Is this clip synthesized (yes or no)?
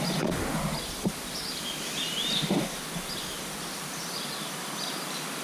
no